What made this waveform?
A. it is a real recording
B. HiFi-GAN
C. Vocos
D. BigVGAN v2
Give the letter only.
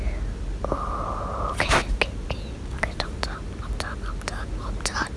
A